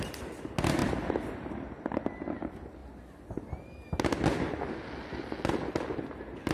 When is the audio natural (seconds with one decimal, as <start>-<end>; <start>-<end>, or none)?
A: 0.0-6.5